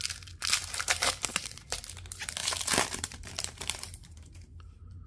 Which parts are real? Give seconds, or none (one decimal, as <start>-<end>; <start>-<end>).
0.0-0.6; 1.8-2.4